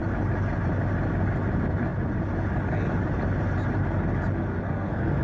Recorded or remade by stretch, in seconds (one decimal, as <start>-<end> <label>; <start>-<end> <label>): 0.0-4.5 recorded; 4.5-5.2 remade